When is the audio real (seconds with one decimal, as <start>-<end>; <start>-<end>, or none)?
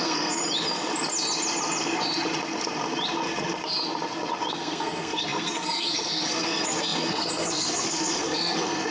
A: 0.4-4.5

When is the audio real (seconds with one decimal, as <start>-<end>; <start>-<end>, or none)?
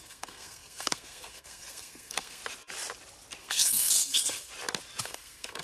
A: 2.4-3.4; 4.5-5.0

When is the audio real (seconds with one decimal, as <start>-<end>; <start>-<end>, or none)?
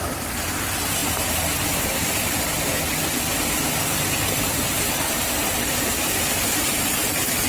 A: 0.0-7.5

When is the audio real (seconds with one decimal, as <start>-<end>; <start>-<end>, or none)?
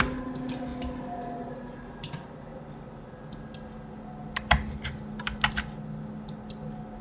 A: 0.0-7.0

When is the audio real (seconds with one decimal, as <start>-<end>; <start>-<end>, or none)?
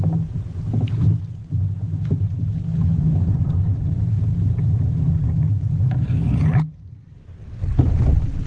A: 0.0-8.5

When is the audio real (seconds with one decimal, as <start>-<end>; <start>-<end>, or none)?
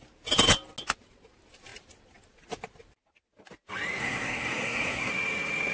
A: 0.0-4.0; 5.1-5.7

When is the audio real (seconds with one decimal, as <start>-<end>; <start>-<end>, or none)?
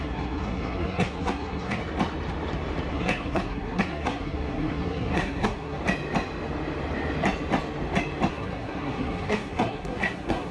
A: 1.8-2.9; 5.8-8.3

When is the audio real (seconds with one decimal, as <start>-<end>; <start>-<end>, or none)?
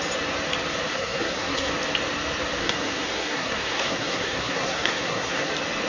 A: 0.0-0.9; 1.7-2.6; 5.5-5.9